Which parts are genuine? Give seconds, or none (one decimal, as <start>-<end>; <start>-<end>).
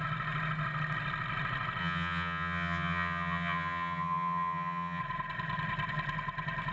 0.0-1.8; 5.0-6.7